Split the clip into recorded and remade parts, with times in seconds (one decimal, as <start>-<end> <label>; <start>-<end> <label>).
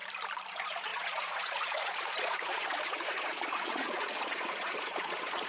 0.0-0.5 recorded; 0.5-5.5 remade